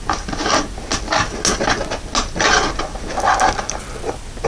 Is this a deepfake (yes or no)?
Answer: no